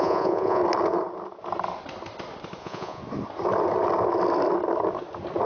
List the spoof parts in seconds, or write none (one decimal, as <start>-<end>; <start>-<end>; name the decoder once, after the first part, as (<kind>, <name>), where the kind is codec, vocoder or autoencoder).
0.0-0.6 (vocoder, Vocos); 2.6-3.0